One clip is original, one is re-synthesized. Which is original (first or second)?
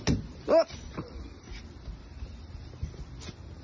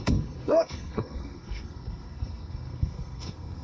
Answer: first